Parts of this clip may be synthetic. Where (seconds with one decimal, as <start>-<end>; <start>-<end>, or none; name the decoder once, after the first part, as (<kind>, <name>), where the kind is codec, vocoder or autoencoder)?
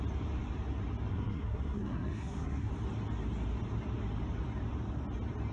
1.1-2.7 (codec, SNAC)